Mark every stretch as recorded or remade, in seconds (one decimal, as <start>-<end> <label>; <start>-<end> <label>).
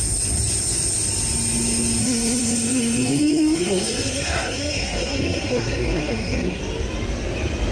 0.0-2.0 recorded; 2.0-6.6 remade; 6.6-7.7 recorded